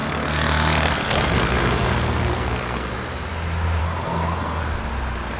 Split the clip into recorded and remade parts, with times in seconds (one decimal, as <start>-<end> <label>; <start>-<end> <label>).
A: 0.0-2.9 remade; 2.9-3.8 recorded; 3.8-4.6 remade; 4.6-5.4 recorded